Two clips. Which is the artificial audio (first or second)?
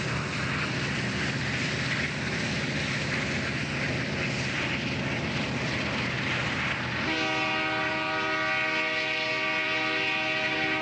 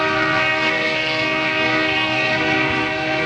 second